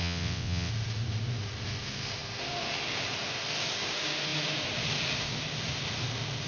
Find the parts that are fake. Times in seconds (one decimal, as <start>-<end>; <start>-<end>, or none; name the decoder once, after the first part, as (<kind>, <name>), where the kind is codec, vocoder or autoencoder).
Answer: 0.0-0.7 (vocoder, WaveNeXt)